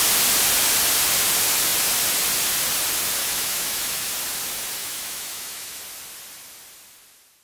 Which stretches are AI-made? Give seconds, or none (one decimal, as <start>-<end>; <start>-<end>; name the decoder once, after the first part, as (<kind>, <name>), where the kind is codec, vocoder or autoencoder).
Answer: 3.2-4.1 (autoencoder, DAC-VAE); 4.8-5.8